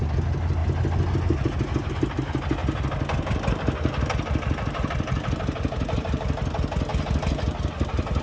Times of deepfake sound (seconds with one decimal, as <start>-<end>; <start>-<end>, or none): none